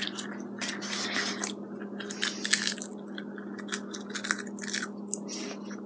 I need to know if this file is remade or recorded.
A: recorded